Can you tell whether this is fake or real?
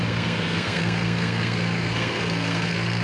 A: fake